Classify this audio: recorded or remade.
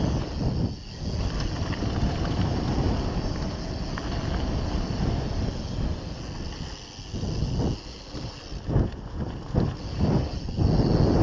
recorded